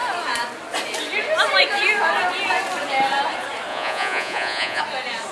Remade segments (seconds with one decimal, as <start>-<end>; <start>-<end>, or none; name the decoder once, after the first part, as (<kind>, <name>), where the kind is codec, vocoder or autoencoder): 3.7-4.8 (vocoder, Vocos)